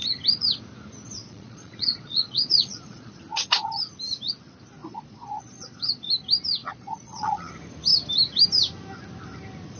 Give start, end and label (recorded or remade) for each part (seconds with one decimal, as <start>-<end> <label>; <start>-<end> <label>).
0.0-1.2 recorded; 1.2-3.2 remade; 3.2-4.8 recorded; 4.8-6.1 remade; 6.1-6.6 recorded; 6.6-7.5 remade; 7.5-9.8 recorded